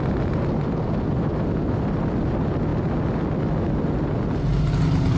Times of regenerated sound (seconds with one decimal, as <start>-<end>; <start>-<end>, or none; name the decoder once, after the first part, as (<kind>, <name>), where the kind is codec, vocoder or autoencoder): none